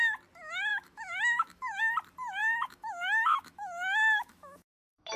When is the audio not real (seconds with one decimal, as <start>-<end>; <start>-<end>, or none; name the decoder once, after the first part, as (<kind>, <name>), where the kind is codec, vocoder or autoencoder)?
0.7-1.8 (autoencoder, DAC-VAE); 2.4-5.2